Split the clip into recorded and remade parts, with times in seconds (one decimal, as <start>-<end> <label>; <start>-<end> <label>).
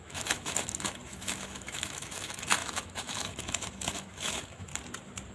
0.0-4.7 remade; 4.7-5.3 recorded